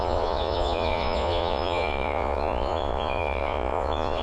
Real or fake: fake